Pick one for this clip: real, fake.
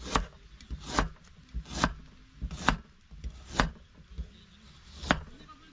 real